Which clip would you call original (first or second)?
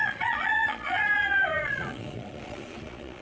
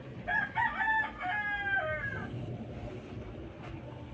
second